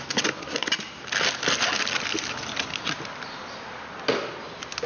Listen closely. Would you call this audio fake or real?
real